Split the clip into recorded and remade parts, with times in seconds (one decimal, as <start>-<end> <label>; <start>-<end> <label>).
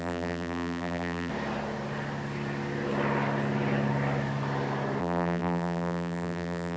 0.0-1.3 remade; 1.3-5.0 recorded; 5.0-6.8 remade